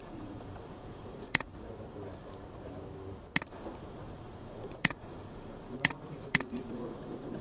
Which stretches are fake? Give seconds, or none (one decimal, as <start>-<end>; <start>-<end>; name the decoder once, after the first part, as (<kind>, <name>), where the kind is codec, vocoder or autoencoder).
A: 0.0-1.5 (vocoder, Vocos); 3.5-7.4

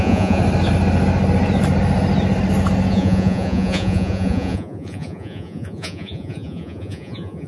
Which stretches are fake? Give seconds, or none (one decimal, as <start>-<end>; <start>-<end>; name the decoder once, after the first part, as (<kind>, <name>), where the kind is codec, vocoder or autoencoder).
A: 0.0-0.4 (vocoder, Vocos); 2.9-7.5

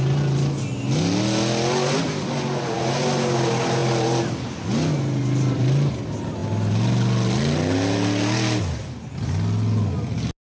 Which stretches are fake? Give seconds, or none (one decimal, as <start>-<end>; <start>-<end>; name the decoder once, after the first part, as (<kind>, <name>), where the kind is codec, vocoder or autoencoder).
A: none

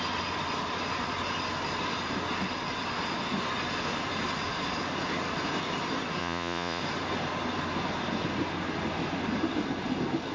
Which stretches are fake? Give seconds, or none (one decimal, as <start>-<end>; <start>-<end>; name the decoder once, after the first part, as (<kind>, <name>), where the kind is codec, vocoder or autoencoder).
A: 6.2-6.8 (vocoder, Vocos)